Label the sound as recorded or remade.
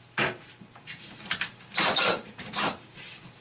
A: remade